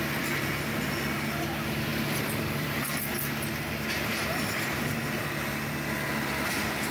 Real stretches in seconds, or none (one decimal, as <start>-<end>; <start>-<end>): 0.0-1.9; 3.1-4.2; 5.4-6.9